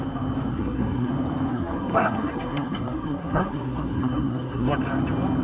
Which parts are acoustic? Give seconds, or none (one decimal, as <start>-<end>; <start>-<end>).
0.0-0.5; 1.1-1.5; 4.7-5.4